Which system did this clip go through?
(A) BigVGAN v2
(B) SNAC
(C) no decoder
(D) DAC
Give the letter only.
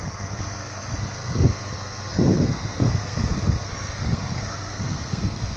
B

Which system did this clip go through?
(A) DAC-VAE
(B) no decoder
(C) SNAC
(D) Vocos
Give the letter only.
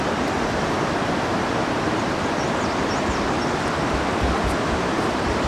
B